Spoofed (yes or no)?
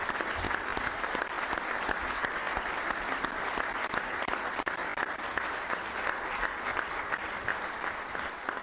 no